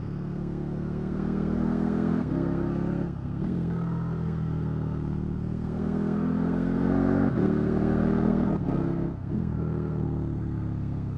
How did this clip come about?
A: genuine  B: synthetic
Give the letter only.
B